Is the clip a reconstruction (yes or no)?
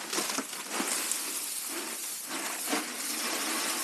no